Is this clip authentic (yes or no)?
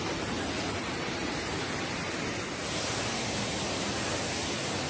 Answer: yes